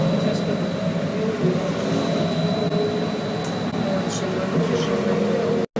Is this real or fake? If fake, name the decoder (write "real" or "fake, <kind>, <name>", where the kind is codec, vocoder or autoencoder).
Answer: real